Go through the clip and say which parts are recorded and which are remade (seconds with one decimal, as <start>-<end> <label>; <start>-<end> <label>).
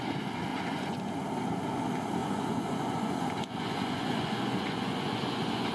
0.0-0.5 recorded; 0.5-1.1 remade; 1.1-2.2 recorded; 2.2-5.7 remade